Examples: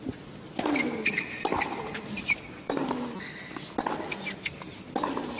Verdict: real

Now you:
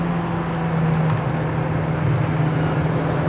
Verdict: real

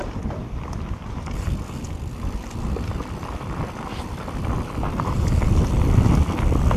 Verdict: fake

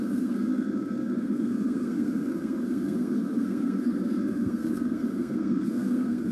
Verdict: fake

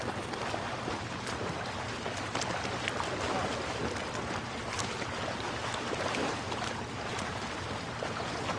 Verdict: real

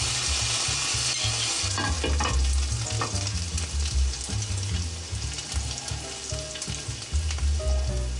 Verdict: real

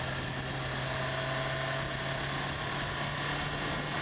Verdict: real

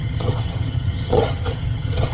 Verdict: fake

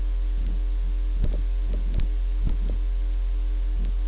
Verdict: real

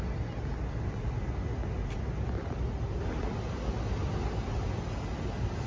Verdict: real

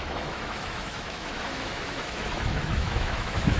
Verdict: fake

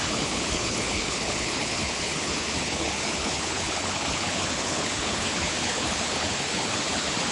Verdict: fake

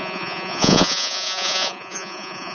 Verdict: fake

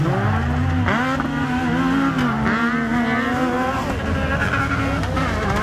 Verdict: real